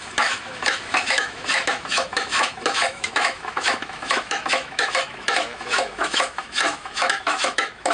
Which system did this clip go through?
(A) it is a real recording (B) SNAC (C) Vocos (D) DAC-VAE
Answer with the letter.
D